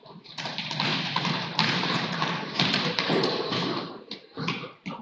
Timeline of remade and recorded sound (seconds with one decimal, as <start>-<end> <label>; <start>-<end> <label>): 0.0-5.0 remade